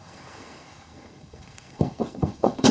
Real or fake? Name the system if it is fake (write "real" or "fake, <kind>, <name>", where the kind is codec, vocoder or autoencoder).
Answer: fake, codec, SNAC